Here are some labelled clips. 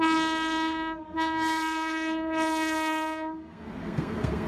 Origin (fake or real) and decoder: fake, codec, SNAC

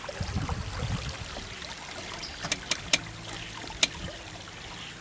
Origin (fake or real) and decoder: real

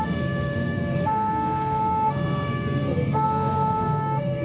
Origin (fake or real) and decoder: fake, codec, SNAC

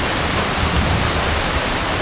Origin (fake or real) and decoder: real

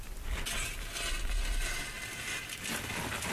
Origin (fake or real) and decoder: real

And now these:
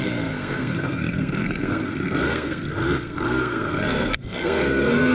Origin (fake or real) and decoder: fake, codec, SNAC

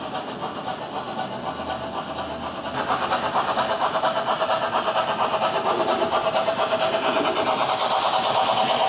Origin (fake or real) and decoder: real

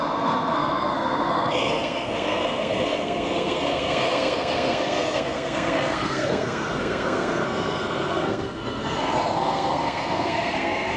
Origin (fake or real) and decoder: fake, codec, SNAC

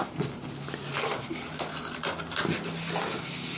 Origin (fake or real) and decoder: real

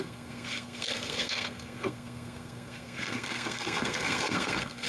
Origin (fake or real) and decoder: fake, codec, SNAC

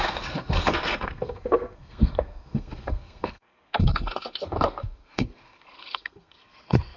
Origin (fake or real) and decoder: fake, codec, SNAC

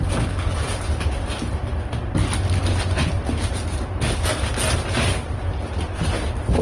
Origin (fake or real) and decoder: real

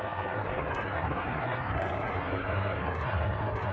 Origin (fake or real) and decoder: fake, codec, SNAC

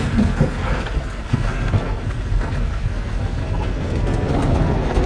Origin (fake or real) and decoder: fake, codec, SNAC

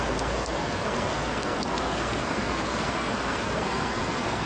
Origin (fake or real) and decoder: fake, codec, SNAC